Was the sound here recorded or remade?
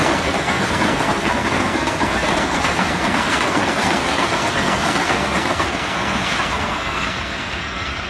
remade